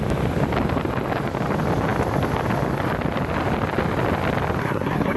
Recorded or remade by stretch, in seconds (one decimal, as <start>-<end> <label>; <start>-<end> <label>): 0.0-4.6 recorded; 4.6-5.2 remade